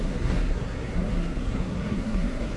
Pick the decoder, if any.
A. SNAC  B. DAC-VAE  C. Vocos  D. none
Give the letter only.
A